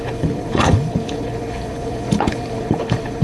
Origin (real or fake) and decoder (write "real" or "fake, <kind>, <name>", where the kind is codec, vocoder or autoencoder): fake, codec, HILCodec